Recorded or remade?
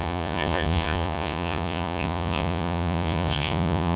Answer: remade